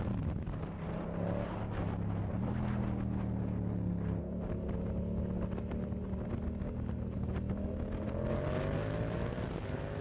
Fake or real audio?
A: real